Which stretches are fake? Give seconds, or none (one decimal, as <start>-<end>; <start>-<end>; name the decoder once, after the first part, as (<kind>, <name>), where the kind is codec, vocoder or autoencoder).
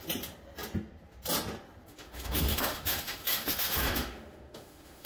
1.9-5.1 (autoencoder, DAC-VAE)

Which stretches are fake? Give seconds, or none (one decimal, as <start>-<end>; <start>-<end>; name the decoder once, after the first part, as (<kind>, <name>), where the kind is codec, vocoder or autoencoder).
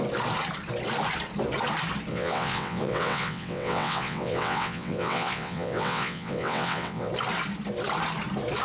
2.1-7.1 (vocoder, WaveNeXt)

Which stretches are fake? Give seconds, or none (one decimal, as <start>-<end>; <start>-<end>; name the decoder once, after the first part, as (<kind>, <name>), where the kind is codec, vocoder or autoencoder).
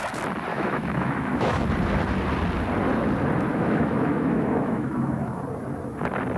0.5-1.6 (autoencoder, DAC-VAE); 3.5-5.4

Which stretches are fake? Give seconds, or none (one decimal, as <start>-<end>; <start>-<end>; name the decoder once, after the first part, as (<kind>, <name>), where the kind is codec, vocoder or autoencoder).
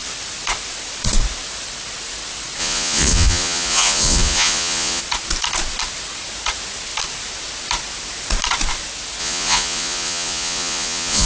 2.6-5.0 (vocoder, Vocos); 9.2-11.3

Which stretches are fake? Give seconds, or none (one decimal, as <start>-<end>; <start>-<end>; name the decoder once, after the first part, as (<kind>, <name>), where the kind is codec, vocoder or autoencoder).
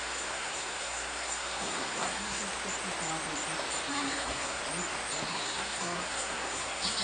0.0-2.4 (codec, SNAC); 3.9-4.6; 5.3-7.0